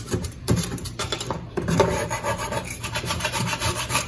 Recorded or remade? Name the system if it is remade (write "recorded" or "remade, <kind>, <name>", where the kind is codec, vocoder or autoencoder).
remade, vocoder, BigVGAN v2